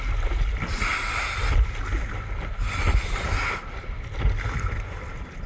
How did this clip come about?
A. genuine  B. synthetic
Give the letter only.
A